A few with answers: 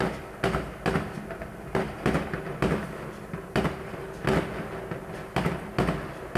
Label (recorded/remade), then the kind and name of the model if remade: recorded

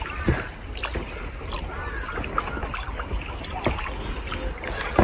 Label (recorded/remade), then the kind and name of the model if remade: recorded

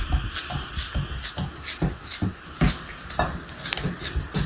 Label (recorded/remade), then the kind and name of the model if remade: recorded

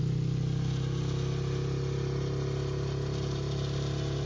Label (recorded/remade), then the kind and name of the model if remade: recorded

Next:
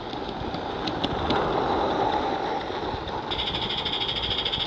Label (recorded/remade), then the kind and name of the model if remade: recorded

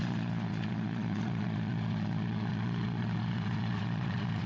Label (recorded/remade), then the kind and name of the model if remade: remade, vocoder, Vocos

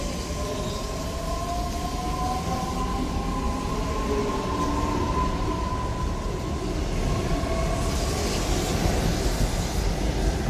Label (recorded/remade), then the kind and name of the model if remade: recorded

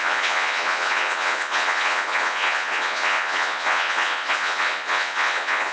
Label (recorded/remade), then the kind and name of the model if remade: remade, vocoder, Vocos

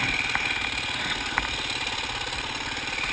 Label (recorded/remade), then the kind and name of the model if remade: recorded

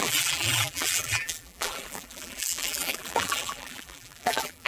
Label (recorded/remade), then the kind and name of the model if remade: remade, vocoder, BigVGAN v2